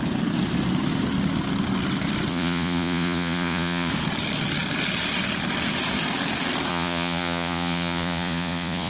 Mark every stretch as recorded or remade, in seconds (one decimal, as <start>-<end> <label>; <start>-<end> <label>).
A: 0.0-2.3 recorded; 2.3-3.9 remade; 3.9-6.7 recorded; 6.7-8.9 remade